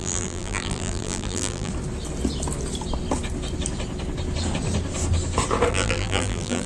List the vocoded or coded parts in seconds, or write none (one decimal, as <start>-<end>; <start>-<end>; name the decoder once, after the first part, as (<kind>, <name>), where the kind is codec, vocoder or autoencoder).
0.0-1.7 (vocoder, BigVGAN v2); 5.7-6.7